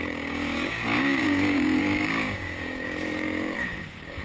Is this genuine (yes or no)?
no